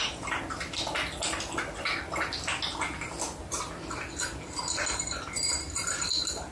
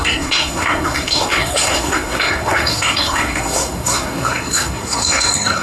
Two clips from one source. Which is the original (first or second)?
first